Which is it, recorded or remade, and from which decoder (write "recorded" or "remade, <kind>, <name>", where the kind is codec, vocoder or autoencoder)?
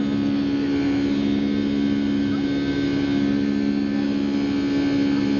recorded